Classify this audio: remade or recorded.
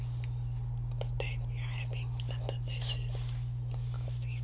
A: recorded